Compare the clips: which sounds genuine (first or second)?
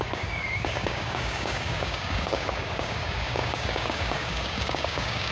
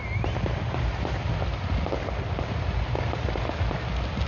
second